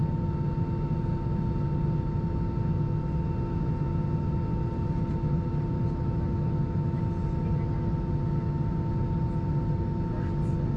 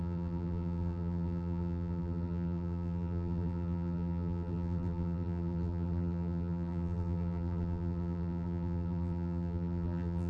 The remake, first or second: second